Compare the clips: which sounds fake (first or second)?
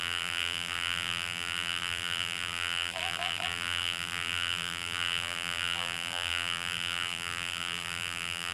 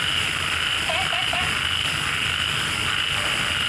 first